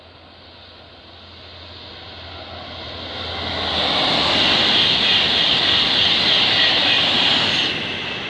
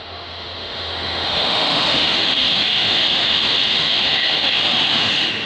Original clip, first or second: first